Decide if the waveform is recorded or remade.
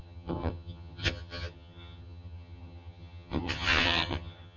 remade